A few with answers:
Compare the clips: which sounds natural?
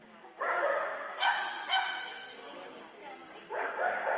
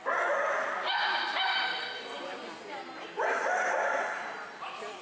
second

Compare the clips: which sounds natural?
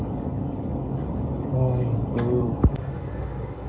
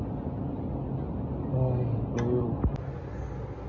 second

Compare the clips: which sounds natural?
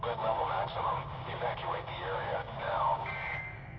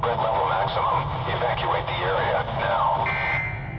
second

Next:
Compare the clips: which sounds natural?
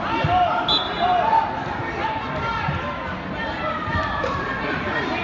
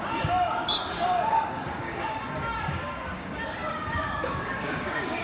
first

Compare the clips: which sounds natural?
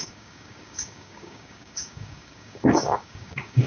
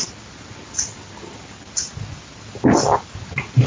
second